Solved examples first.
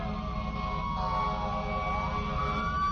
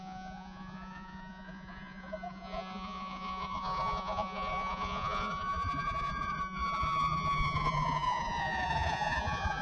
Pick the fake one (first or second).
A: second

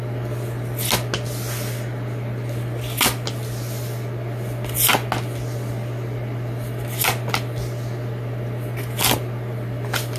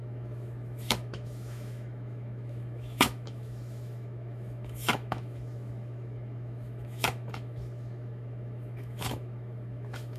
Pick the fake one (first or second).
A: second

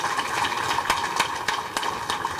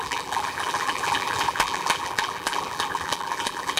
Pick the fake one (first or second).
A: second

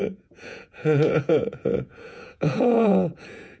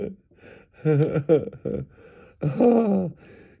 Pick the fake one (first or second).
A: first